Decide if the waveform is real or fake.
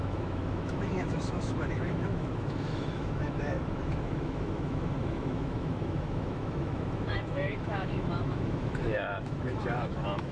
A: fake